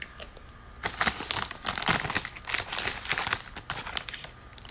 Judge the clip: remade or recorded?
recorded